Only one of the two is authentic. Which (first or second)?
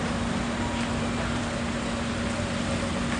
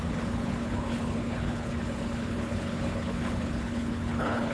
first